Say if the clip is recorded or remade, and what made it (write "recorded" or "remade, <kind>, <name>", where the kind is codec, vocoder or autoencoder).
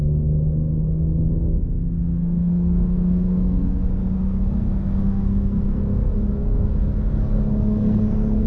remade, codec, SNAC